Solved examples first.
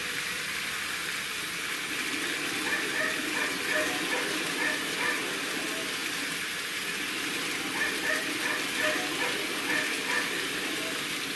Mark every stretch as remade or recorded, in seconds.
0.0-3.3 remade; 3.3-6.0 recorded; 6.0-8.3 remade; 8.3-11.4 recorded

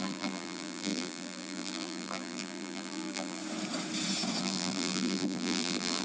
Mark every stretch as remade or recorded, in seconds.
0.0-3.4 remade; 3.4-4.4 recorded; 4.4-6.0 remade

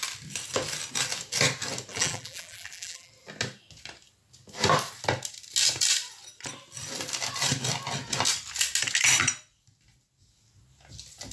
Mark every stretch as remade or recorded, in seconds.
0.0-1.9 recorded; 1.9-3.1 remade; 3.1-11.3 recorded

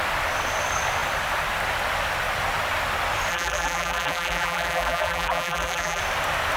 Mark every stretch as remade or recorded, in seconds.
0.0-3.3 recorded; 3.3-6.0 remade; 6.0-6.6 recorded

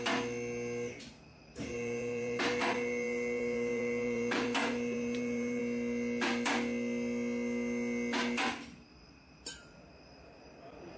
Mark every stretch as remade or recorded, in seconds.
0.0-1.3 recorded; 1.3-5.6 remade; 5.6-11.0 recorded